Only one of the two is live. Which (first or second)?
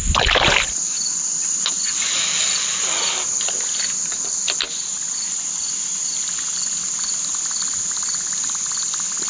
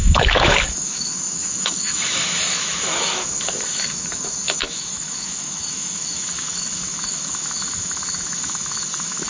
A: first